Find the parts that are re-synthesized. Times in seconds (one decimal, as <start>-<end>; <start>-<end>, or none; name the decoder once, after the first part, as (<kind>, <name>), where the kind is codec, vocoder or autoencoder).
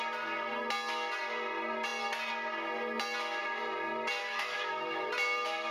4.2-5.1 (autoencoder, DAC-VAE)